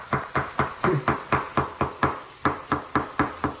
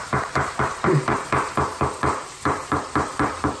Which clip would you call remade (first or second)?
second